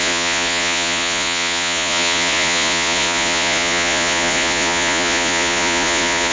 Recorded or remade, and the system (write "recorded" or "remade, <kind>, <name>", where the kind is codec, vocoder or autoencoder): remade, vocoder, Vocos